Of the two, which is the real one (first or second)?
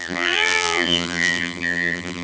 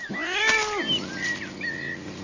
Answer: second